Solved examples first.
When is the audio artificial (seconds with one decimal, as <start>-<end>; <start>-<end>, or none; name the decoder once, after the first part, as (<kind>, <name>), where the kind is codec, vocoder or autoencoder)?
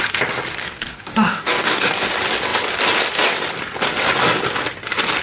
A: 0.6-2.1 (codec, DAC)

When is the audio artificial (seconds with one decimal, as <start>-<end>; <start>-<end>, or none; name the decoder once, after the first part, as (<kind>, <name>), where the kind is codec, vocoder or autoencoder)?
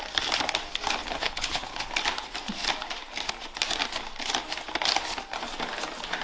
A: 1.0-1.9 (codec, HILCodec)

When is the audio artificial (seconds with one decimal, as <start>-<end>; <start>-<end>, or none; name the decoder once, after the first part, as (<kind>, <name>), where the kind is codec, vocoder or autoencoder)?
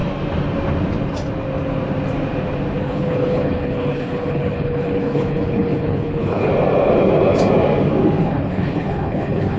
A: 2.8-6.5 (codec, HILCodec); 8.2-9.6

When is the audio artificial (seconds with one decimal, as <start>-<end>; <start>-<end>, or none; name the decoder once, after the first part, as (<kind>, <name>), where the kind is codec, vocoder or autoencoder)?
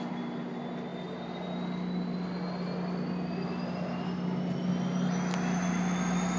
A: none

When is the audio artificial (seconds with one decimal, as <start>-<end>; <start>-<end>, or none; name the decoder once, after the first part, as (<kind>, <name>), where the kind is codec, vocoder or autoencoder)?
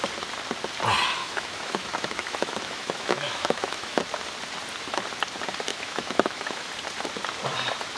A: 1.2-4.0 (autoencoder, DAC-VAE); 5.7-6.7